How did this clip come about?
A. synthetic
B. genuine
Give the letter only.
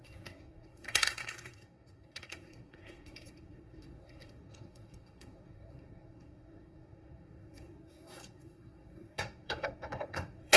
A